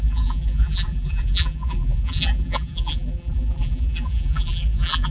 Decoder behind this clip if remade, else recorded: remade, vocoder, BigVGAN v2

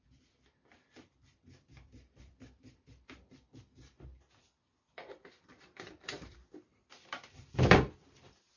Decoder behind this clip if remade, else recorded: remade, vocoder, BigVGAN v2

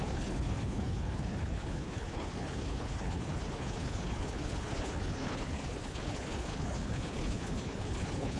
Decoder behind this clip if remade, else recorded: remade, codec, HILCodec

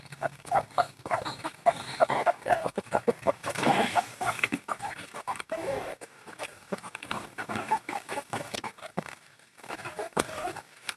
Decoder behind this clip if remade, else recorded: remade, codec, DAC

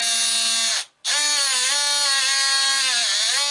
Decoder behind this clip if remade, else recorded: recorded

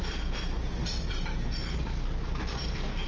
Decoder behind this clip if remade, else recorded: remade, vocoder, BigVGAN v2